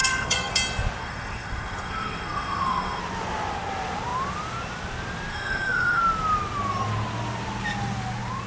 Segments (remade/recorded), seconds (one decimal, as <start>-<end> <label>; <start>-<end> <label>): 0.0-0.5 remade; 0.5-1.0 recorded; 1.0-3.0 remade; 3.0-5.3 recorded; 5.3-6.0 remade; 6.0-8.5 recorded